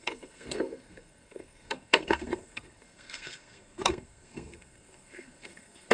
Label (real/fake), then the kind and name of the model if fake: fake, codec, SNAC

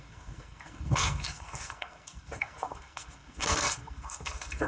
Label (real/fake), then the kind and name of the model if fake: fake, codec, SNAC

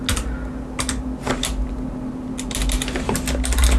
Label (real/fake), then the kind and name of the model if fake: real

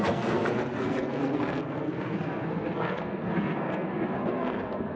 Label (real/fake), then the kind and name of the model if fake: fake, codec, SNAC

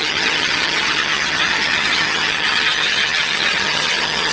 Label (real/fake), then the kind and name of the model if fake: fake, vocoder, HiFi-GAN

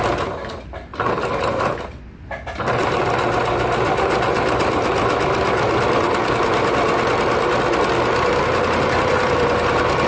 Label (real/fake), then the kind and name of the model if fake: real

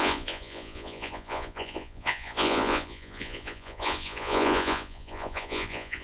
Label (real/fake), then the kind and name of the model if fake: fake, vocoder, Vocos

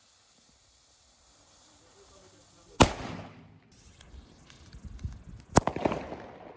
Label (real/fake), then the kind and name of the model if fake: real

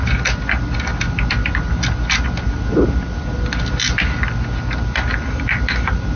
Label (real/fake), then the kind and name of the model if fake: real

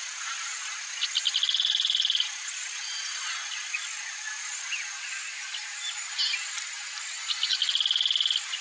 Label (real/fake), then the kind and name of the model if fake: real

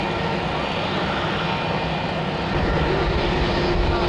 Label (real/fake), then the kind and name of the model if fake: real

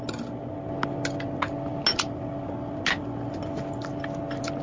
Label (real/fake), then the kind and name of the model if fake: real